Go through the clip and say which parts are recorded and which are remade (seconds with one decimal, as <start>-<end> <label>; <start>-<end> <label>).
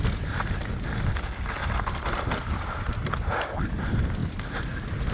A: 0.0-5.1 recorded